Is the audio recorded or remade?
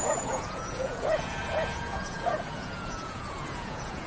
remade